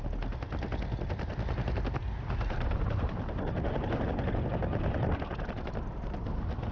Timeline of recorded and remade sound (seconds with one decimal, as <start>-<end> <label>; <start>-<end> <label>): 0.0-2.0 recorded; 2.0-3.3 remade; 3.3-6.7 recorded

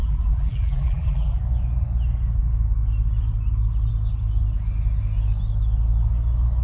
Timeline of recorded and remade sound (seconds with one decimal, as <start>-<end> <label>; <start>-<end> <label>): 0.0-1.4 remade; 1.4-6.6 recorded